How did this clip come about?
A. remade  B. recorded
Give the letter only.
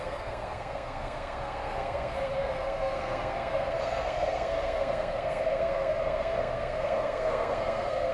A